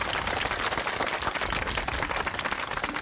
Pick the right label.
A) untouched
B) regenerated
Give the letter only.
A